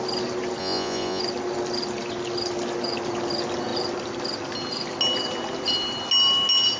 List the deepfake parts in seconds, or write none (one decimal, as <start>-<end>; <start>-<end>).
0.6-1.2